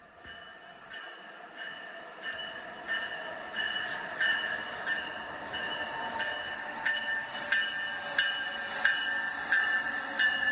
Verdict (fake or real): real